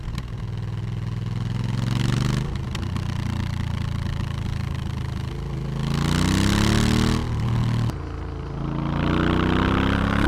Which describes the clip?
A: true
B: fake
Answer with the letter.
A